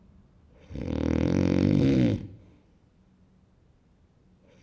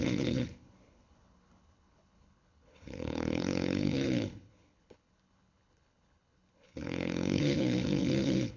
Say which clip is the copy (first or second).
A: second